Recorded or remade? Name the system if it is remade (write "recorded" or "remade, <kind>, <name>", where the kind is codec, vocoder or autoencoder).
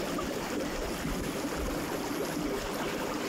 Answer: recorded